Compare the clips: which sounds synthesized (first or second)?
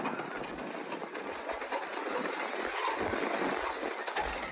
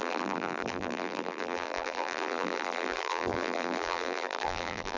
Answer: second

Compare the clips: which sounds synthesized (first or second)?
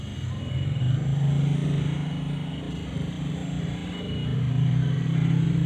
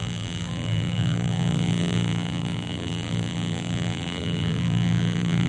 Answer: second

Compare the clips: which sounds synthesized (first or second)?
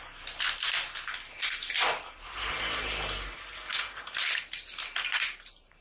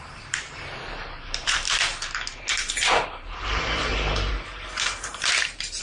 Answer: second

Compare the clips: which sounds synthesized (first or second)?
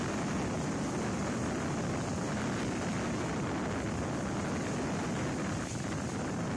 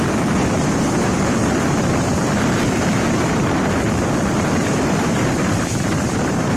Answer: second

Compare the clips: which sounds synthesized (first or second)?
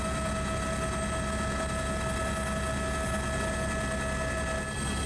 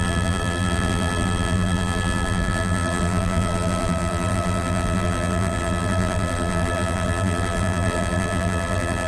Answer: second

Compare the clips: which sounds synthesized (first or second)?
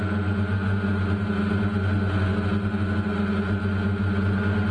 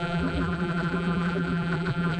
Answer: second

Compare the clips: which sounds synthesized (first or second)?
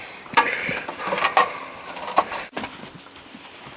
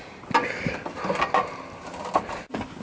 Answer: first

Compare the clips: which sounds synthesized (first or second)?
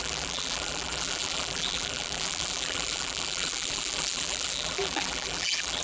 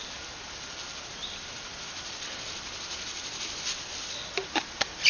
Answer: first